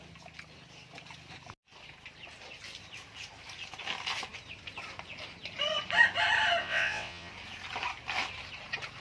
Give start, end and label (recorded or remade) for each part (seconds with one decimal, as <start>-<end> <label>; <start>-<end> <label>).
0.0-6.6 recorded; 6.6-7.3 remade; 7.3-9.0 recorded